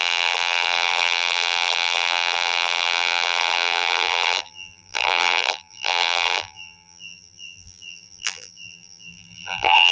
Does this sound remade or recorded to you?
remade